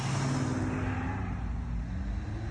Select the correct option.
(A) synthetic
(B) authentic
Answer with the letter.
B